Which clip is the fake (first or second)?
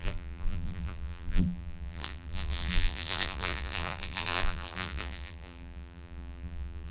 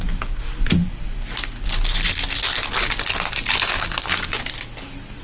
first